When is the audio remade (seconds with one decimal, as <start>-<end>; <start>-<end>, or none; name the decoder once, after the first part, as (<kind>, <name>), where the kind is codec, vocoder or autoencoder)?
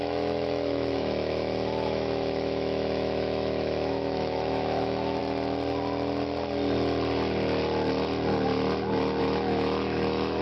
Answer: 0.0-5.2 (autoencoder, DAC-VAE); 9.2-10.4